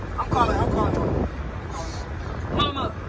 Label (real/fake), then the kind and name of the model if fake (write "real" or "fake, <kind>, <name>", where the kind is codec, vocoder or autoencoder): real